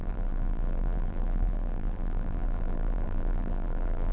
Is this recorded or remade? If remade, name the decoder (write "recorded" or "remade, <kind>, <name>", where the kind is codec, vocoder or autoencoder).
remade, vocoder, BigVGAN v2